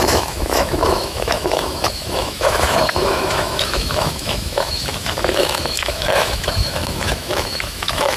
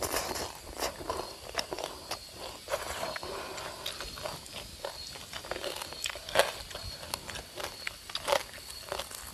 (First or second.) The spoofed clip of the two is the first